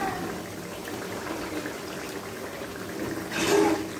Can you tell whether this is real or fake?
real